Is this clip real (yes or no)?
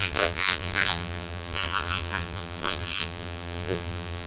no